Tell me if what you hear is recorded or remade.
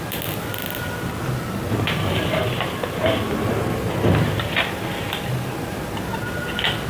recorded